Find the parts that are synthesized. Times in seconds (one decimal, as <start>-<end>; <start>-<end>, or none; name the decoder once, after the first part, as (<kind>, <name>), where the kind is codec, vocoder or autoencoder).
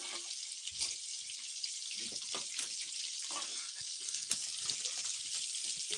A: 3.5-4.3 (codec, SNAC)